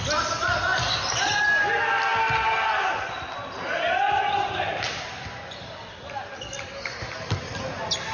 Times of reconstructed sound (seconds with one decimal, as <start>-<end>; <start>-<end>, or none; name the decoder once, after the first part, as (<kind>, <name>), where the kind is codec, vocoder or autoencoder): none